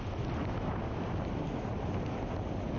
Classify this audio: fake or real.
real